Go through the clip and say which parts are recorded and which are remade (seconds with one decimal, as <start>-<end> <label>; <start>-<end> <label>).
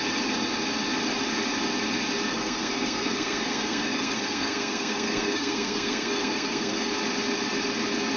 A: 0.0-2.3 recorded; 2.3-6.9 remade; 6.9-8.2 recorded